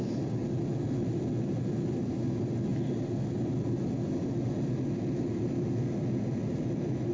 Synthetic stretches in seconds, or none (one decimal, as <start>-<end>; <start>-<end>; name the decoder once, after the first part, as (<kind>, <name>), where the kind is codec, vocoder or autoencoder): none